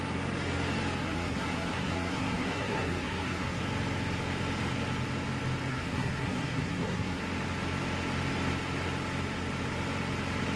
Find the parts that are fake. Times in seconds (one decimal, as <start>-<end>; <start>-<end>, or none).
1.0-3.6; 5.7-7.2